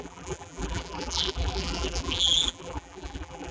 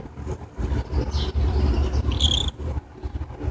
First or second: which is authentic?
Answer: second